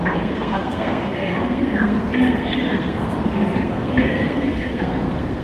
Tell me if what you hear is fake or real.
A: fake